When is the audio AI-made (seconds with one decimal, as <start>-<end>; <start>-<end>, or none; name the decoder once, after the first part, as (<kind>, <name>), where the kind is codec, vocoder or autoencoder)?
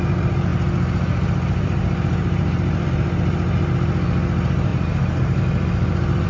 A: 4.7-5.4 (vocoder, BigVGAN v2)